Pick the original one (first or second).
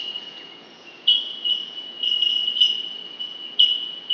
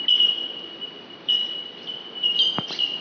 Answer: second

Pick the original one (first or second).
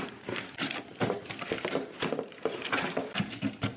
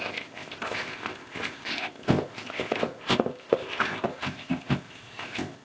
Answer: first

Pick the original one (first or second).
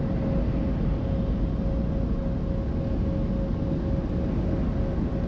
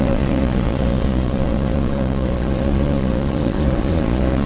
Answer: first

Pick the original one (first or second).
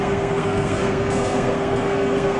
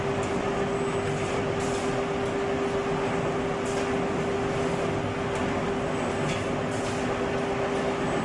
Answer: second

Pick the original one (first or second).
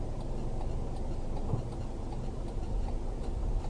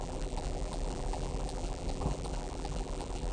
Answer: first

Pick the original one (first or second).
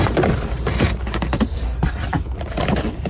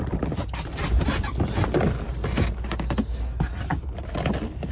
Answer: second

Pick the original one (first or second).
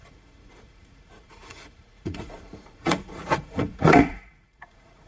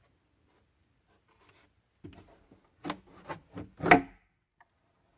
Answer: second